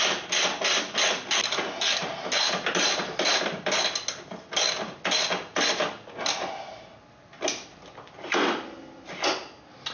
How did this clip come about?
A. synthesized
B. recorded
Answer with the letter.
B